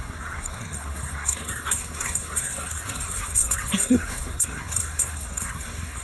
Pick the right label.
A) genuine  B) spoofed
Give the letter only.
B